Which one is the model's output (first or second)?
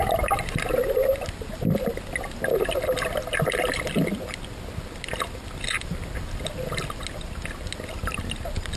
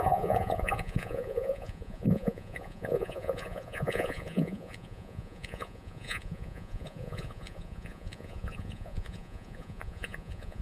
second